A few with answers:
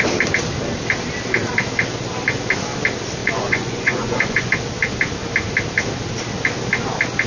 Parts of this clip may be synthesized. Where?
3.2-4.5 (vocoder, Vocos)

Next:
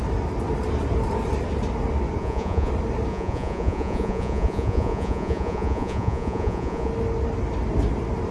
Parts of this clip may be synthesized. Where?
2.2-2.7 (vocoder, Vocos); 3.1-6.9

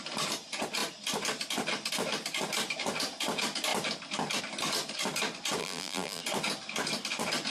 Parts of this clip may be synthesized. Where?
5.6-6.2 (vocoder, BigVGAN v2)

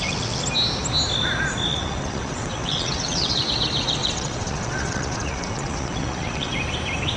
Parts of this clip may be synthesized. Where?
1.7-3.5 (vocoder, WaveNeXt); 4.0-6.5

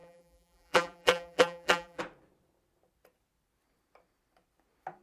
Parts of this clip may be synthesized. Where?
0.0-2.0 (vocoder, BigVGAN v2)